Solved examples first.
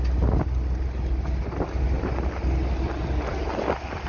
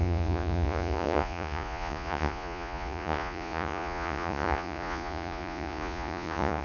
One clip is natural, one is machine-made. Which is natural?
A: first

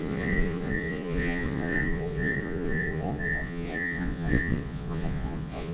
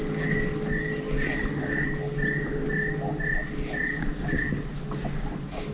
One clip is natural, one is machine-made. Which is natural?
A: second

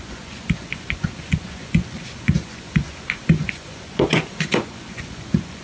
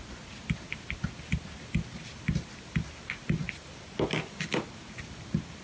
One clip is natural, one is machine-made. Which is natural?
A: second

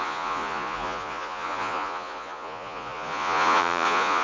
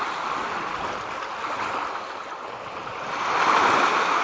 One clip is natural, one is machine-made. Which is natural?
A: second